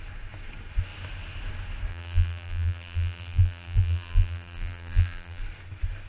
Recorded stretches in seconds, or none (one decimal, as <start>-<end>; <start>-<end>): 0.0-1.9; 5.4-6.1

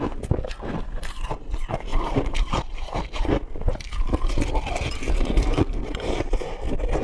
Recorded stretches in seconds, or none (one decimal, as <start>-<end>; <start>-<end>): 0.0-1.9; 3.0-7.0

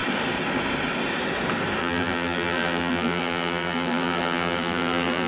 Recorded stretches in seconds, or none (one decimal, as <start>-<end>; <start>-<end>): 0.0-1.8

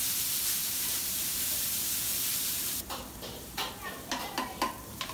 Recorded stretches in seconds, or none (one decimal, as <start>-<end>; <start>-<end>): 0.0-0.6; 3.7-5.1

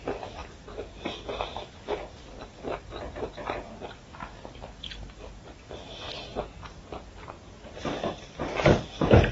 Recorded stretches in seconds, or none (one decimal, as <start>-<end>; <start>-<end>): 0.0-0.4; 1.6-6.3; 8.4-9.3

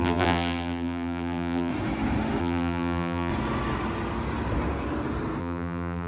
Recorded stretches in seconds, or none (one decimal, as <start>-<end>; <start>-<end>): 1.7-2.4; 3.3-5.4

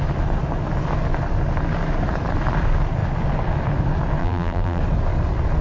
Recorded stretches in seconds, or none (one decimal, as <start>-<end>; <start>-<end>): 0.0-4.2; 4.8-5.6

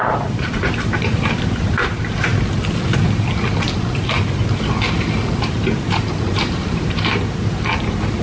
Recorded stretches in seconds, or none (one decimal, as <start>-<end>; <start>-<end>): 2.3-5.4